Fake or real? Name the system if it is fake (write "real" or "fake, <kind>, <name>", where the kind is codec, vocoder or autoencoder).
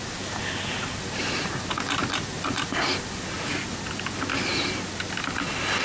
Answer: real